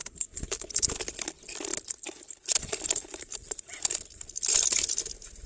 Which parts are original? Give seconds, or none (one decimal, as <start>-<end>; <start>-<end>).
0.9-1.7; 5.0-5.5

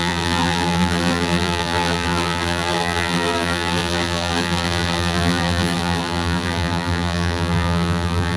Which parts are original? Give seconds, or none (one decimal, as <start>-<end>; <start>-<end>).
none

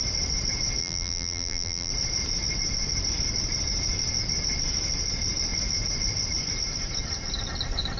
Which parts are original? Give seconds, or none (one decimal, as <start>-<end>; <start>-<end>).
0.0-0.8; 1.9-8.0

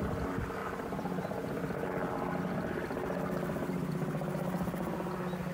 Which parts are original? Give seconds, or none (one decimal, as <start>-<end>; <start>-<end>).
0.0-0.6; 2.4-5.5